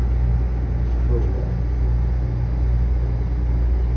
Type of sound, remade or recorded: recorded